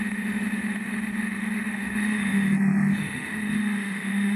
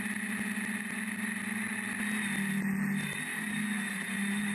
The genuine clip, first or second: second